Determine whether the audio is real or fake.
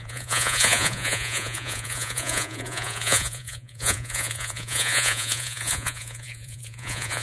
fake